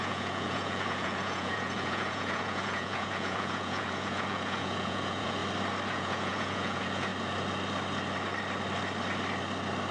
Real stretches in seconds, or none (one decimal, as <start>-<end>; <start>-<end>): 5.4-5.9; 7.1-9.9